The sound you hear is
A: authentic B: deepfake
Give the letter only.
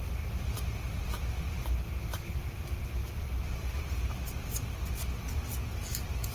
A